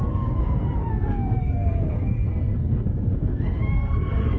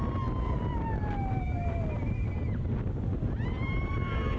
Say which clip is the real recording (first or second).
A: second